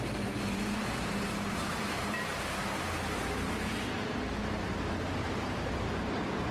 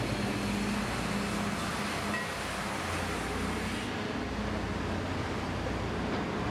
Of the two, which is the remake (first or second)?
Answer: first